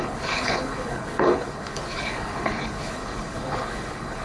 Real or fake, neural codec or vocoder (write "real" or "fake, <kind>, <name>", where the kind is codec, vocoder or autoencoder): fake, codec, HILCodec